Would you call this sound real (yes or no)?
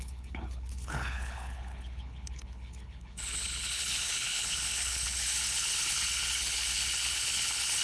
no